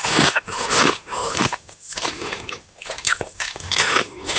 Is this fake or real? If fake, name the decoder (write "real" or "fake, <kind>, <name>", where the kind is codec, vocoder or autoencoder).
fake, autoencoder, DAC-VAE